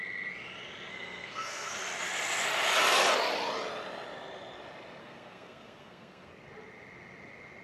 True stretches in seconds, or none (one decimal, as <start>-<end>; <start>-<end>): 0.0-0.9; 1.7-5.0; 6.3-7.6